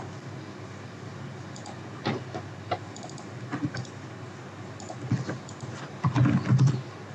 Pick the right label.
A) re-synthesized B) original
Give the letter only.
B